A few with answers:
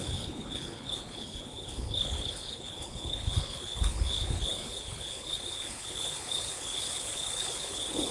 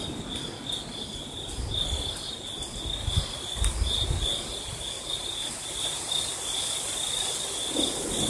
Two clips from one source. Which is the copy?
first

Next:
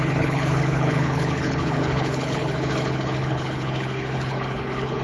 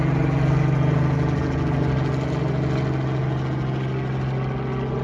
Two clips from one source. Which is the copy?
first